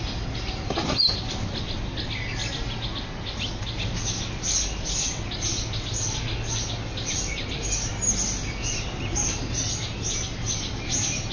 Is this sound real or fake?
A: real